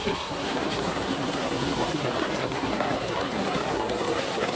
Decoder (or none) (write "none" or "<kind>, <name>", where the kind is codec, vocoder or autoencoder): codec, SNAC